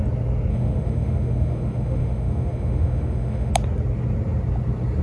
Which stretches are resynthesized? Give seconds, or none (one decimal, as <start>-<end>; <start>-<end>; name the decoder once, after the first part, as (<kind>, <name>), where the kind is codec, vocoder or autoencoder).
0.5-3.5 (autoencoder, DAC-VAE)